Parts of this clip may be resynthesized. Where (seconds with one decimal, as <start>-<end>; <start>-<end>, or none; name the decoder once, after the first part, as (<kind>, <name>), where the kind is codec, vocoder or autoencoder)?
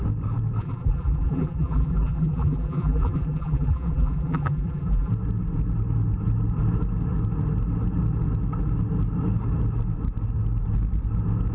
0.6-5.1 (vocoder, BigVGAN v2)